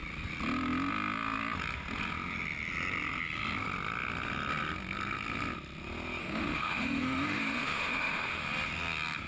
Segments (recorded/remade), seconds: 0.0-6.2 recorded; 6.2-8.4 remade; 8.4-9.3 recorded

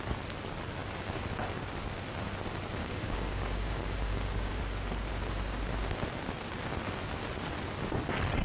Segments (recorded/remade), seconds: 0.0-2.8 recorded; 2.8-4.6 remade; 4.6-8.4 recorded

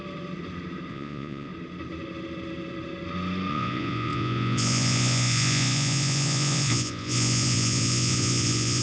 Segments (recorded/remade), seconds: 0.0-0.9 recorded; 0.9-1.5 remade; 1.5-3.5 recorded; 3.5-8.8 remade

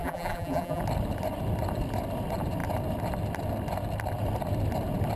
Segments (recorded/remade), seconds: 0.0-0.8 remade; 0.8-5.2 recorded

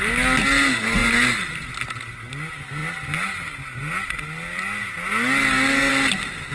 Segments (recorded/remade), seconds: 0.0-6.5 recorded

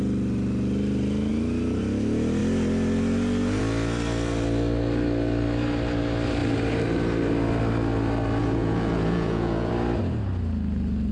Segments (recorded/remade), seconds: 0.0-8.4 recorded; 8.4-9.7 remade; 9.7-11.1 recorded

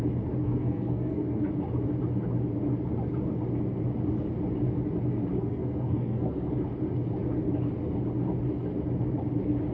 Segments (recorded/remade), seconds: 0.0-0.4 recorded; 0.4-1.5 remade; 1.5-5.3 recorded; 5.3-6.5 remade; 6.5-9.7 recorded

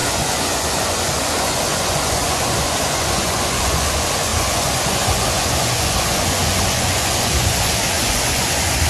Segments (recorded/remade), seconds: 0.0-8.9 remade